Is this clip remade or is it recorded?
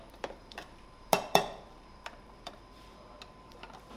remade